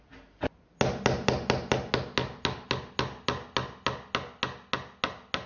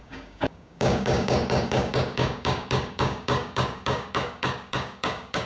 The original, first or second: first